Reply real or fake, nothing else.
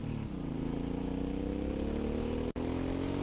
real